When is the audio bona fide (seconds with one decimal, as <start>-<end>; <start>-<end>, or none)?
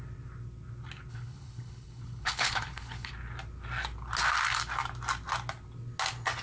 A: 0.0-1.1; 3.1-6.4